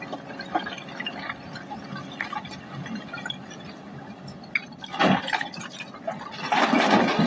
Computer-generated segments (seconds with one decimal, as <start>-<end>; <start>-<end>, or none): none